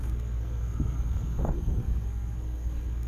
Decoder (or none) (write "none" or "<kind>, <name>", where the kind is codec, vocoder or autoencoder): codec, SNAC